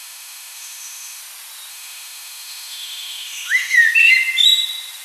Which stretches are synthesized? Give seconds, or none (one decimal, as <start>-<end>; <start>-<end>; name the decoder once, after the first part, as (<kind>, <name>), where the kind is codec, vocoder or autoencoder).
0.0-1.2 (autoencoder, DAC-VAE); 1.7-3.8